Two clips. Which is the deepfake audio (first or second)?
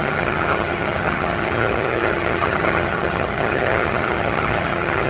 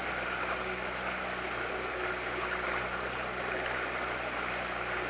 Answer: first